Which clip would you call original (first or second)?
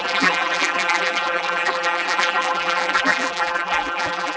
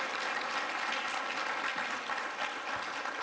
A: second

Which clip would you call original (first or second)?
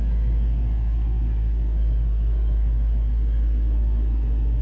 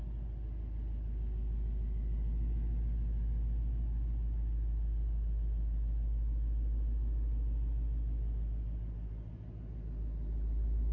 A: second